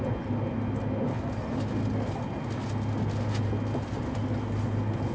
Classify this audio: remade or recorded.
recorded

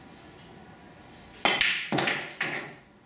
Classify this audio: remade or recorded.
recorded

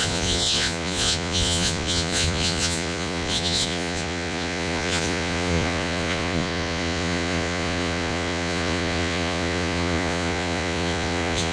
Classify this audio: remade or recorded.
remade